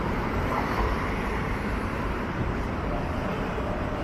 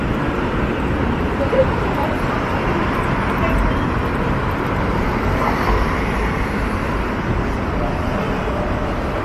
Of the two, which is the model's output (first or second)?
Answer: first